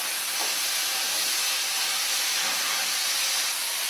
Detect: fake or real real